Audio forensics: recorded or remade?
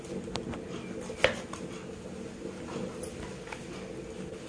recorded